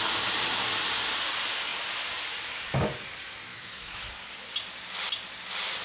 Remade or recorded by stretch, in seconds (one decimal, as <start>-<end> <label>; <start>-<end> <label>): 0.0-3.5 recorded; 3.5-4.0 remade; 4.0-5.8 recorded